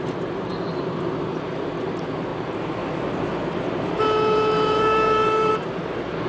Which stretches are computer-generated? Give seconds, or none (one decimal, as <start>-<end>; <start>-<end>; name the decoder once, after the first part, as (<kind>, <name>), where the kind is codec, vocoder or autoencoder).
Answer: 2.3-5.5 (vocoder, BigVGAN v2)